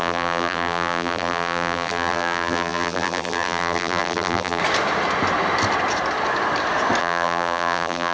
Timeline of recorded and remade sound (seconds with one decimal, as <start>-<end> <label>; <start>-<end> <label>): 0.0-4.6 remade; 4.6-7.0 recorded; 7.0-8.1 remade